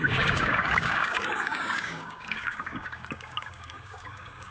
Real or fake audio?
fake